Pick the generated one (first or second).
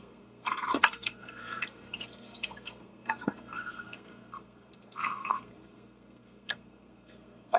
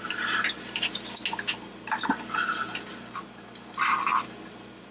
first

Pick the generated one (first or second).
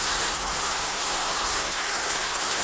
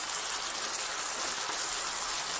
first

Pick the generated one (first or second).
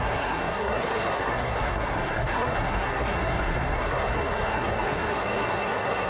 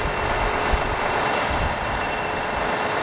first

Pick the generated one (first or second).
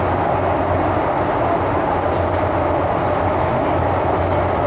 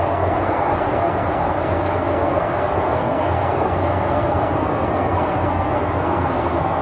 second